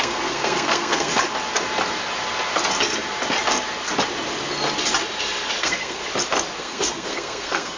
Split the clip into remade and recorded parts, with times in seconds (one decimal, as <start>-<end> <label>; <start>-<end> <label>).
0.0-1.1 remade; 1.1-5.6 recorded; 5.6-6.0 remade; 6.0-6.6 recorded; 6.6-7.8 remade